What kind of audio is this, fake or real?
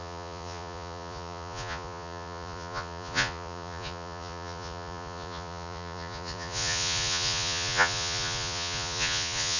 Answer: fake